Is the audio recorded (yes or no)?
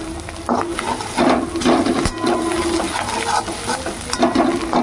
yes